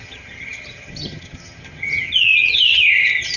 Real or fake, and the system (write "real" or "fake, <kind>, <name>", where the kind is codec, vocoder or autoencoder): fake, vocoder, HiFi-GAN